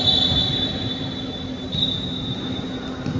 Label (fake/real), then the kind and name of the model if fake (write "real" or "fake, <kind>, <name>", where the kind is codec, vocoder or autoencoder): real